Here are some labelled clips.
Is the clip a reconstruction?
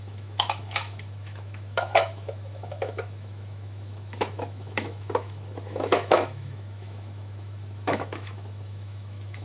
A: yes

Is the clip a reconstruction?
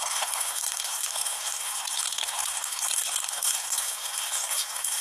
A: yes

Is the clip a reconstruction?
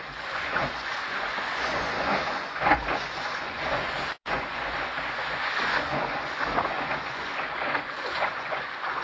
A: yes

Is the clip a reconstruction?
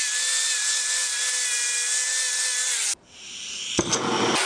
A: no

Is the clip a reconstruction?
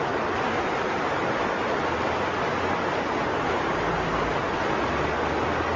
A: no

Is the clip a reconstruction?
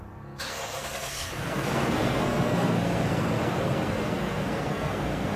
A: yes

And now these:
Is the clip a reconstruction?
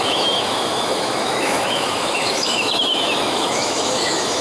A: yes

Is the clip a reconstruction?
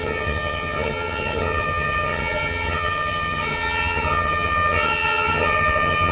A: yes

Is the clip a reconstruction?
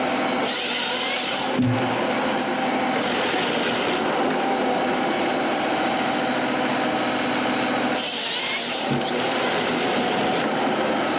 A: no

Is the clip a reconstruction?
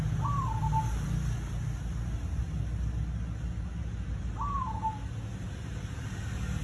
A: no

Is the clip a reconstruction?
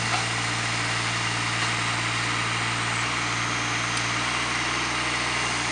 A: no